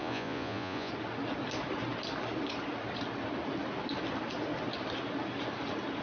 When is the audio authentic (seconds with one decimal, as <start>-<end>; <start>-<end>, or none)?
0.9-6.0